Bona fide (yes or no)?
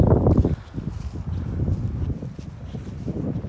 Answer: yes